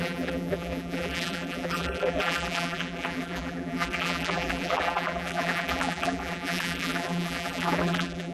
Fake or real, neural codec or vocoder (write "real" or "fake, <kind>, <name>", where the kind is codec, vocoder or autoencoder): fake, vocoder, BigVGAN v2